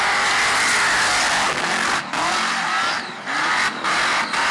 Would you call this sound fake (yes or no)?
no